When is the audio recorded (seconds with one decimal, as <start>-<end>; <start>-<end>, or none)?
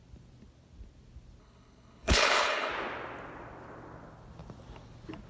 0.0-1.4; 2.7-5.3